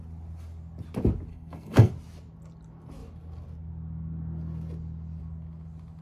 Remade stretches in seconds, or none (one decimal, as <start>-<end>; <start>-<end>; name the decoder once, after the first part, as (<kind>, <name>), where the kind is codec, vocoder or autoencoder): 1.3-1.9 (codec, SNAC)